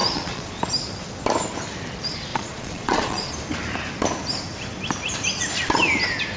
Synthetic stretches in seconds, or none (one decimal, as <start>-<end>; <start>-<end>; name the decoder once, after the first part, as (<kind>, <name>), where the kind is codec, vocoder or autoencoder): 0.0-0.6 (vocoder, Vocos); 2.3-3.3